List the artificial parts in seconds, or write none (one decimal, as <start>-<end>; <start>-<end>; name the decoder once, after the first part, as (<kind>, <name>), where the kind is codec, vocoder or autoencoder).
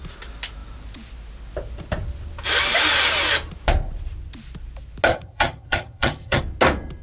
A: 5.1-6.4 (vocoder, HiFi-GAN)